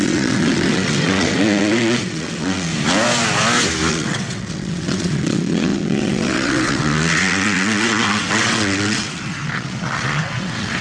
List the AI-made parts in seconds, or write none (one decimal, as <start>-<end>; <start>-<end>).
0.0-2.7; 3.9-10.8